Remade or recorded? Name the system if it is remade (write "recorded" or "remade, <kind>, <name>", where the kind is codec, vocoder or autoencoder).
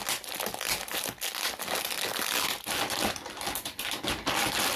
recorded